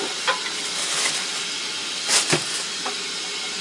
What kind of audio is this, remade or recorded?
recorded